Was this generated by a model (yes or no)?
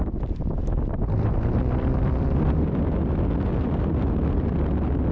no